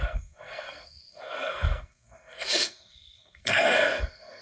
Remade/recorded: remade